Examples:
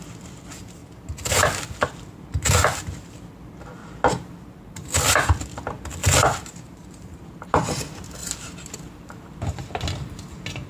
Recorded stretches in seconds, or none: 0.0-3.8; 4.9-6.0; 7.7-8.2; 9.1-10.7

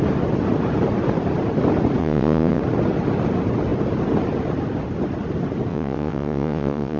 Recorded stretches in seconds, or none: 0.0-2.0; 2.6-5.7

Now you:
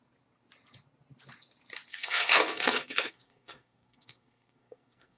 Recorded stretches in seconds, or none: 0.0-1.9